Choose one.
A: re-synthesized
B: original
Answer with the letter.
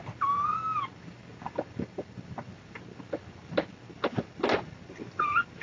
B